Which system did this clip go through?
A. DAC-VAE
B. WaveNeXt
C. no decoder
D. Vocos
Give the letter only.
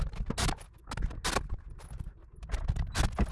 C